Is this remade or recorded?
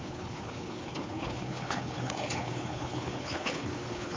remade